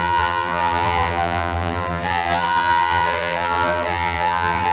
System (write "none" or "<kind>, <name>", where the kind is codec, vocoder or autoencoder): vocoder, BigVGAN v2